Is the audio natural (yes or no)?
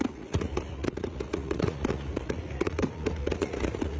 no